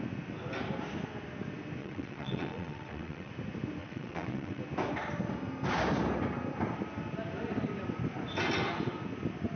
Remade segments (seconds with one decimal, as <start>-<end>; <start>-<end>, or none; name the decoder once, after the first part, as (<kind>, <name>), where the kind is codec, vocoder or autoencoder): 1.8-3.3 (vocoder, WaveNeXt); 3.8-4.6